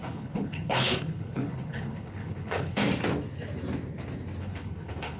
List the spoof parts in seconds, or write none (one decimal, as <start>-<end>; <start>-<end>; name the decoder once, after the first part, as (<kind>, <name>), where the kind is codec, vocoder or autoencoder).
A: 0.0-2.8 (codec, HILCodec); 4.4-5.2